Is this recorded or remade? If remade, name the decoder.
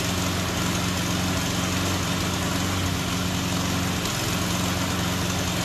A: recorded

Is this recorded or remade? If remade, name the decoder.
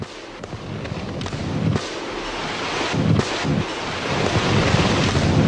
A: recorded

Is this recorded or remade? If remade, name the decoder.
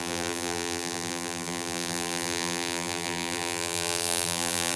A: remade, vocoder, BigVGAN v2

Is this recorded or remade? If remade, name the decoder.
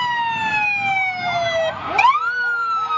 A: recorded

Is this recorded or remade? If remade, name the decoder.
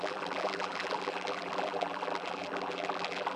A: remade, vocoder, BigVGAN v2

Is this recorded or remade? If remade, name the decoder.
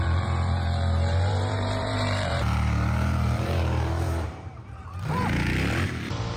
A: remade, vocoder, BigVGAN v2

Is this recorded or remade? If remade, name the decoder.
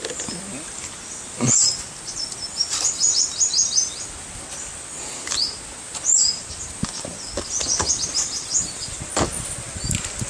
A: recorded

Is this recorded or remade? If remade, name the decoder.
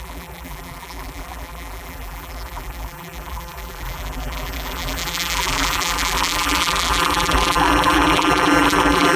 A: remade, vocoder, BigVGAN v2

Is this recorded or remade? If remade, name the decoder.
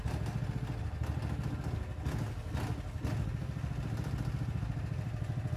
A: recorded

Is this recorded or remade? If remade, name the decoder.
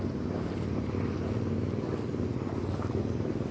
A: recorded